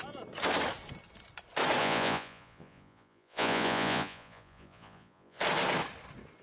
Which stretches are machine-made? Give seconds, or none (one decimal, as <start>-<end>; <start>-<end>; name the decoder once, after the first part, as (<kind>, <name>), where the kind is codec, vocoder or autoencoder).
1.8-5.4 (vocoder, Vocos)